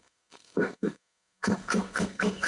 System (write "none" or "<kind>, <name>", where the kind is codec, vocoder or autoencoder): codec, SNAC